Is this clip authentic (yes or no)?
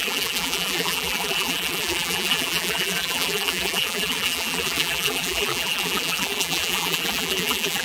no